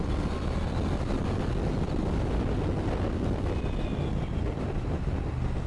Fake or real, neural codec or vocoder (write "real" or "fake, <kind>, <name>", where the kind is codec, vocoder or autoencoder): real